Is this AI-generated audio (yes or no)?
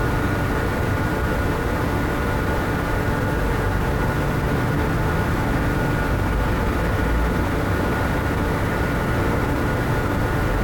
no